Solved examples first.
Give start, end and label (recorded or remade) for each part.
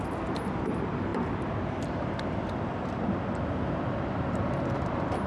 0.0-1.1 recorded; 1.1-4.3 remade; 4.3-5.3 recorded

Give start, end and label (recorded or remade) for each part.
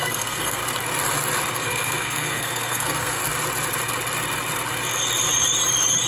0.0-0.6 remade; 0.6-1.5 recorded; 1.5-3.2 remade; 3.2-6.1 recorded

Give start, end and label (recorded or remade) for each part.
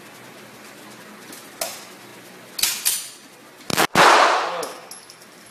0.0-5.5 recorded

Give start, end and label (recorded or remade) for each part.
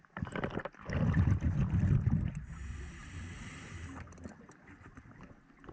0.0-5.7 recorded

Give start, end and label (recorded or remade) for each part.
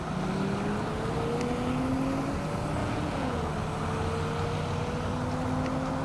0.0-2.8 recorded; 2.8-3.5 remade; 3.5-6.0 recorded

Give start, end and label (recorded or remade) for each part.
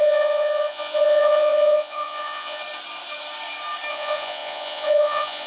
0.0-2.6 remade; 2.6-3.9 recorded; 3.9-5.5 remade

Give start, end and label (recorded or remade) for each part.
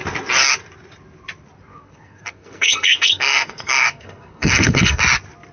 0.0-1.7 recorded; 1.7-5.0 remade; 5.0-5.5 recorded